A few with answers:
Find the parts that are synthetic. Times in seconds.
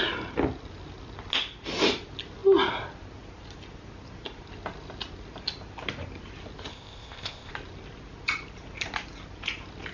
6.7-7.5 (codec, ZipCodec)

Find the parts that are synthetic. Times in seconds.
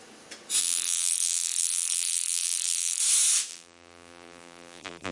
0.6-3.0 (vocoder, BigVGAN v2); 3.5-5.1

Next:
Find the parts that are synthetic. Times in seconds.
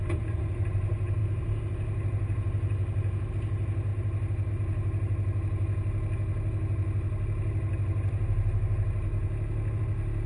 3.9-4.5 (vocoder, BigVGAN v2)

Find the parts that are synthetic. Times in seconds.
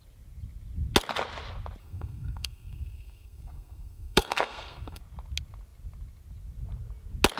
1.8-5.0 (codec, SNAC)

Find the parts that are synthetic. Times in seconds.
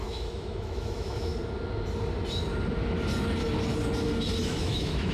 0.0-1.3 (autoencoder, DAC-VAE); 4.4-5.1